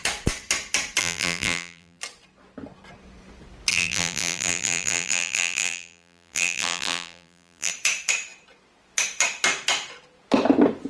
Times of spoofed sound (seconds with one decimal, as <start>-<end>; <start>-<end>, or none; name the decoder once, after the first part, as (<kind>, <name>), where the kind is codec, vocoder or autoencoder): 1.0-2.0 (vocoder, BigVGAN v2); 3.7-7.7